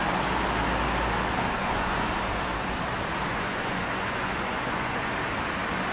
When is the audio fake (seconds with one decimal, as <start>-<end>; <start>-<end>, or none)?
1.6-2.1; 3.3-5.1